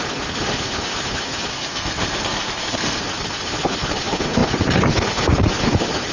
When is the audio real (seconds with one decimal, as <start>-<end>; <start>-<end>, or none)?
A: 0.0-1.5; 3.0-6.1